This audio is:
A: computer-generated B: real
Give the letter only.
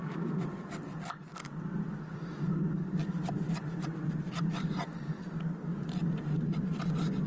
A